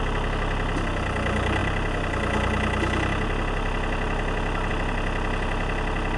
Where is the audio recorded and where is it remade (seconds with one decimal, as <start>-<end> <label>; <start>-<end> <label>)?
0.0-6.2 recorded

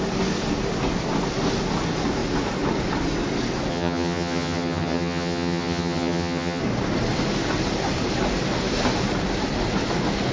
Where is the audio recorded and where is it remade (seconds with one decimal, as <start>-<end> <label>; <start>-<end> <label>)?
0.0-3.7 recorded; 3.7-6.6 remade; 6.6-10.3 recorded

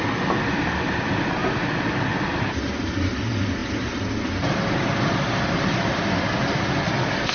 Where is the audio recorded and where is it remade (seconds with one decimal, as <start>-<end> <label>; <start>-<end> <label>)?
0.0-7.3 recorded